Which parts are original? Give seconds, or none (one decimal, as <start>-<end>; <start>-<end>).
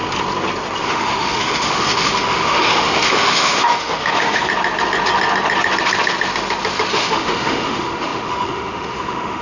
0.0-0.8; 4.5-6.9